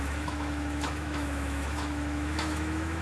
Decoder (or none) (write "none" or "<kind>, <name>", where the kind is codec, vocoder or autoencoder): autoencoder, DAC-VAE